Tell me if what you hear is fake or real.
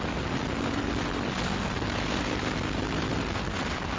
real